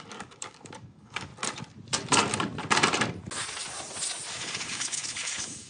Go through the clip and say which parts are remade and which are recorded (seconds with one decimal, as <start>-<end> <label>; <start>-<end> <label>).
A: 0.0-1.3 remade; 1.3-4.3 recorded; 4.3-5.7 remade